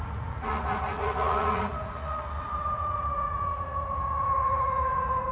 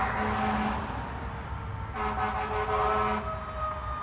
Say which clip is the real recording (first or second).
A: second